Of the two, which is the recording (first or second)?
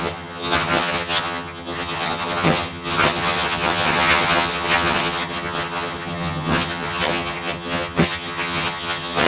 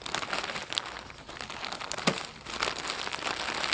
second